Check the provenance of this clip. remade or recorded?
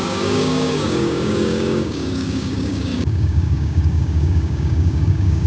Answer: remade